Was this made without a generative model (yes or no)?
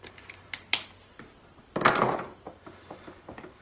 yes